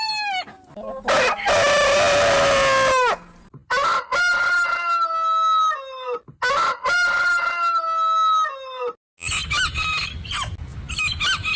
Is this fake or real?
real